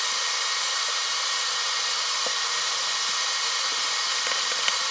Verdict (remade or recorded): recorded